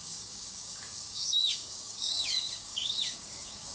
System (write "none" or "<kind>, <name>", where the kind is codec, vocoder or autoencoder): codec, DAC